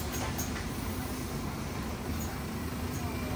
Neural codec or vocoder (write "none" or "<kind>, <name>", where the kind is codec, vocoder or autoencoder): none